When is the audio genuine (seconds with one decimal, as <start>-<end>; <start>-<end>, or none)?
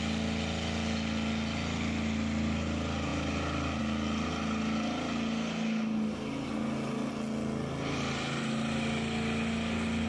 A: 0.0-10.1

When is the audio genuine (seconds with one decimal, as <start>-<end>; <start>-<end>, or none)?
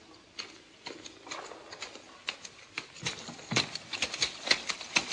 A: 0.0-5.1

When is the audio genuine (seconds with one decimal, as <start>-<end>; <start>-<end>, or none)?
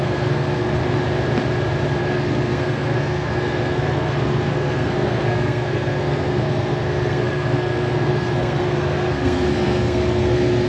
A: 0.8-2.0